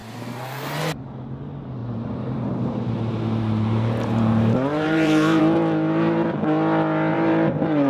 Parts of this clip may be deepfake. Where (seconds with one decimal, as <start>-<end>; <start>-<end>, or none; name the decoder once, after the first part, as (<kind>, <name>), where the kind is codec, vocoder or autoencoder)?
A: 0.0-0.8 (vocoder, BigVGAN v2); 1.8-5.4; 7.1-7.9